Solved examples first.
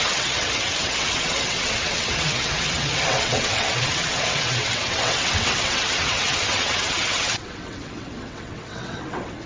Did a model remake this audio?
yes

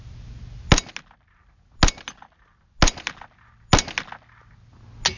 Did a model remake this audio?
no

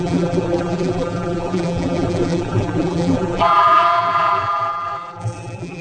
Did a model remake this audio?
yes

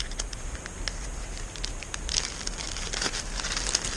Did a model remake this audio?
no